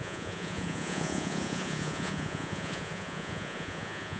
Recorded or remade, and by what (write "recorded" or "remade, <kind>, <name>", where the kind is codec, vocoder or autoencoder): remade, vocoder, Vocos